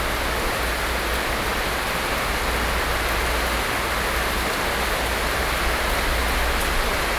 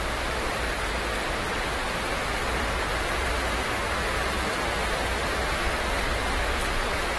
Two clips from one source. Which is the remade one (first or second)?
second